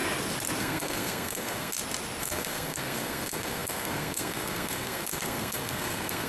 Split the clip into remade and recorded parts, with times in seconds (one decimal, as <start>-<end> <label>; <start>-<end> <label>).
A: 0.0-0.6 recorded; 0.6-1.7 remade; 1.7-2.2 recorded; 2.2-6.3 remade